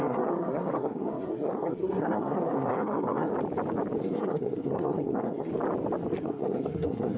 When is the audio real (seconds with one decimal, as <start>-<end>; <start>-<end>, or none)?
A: 3.3-4.0; 5.5-6.2